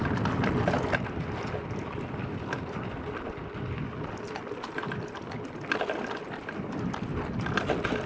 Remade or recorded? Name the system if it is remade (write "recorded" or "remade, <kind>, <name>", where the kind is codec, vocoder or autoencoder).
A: recorded